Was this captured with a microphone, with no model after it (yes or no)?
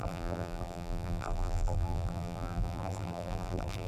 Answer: no